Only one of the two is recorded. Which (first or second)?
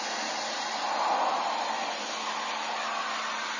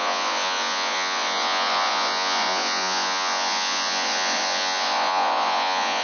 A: first